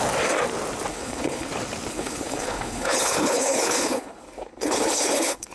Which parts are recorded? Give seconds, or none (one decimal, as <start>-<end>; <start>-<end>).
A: 0.0-0.9; 1.5-1.9